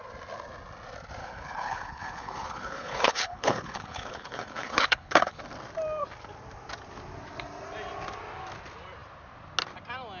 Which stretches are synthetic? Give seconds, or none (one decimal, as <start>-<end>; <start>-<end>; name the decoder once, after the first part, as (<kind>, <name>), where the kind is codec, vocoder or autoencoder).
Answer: 1.2-5.4 (codec, HILCodec)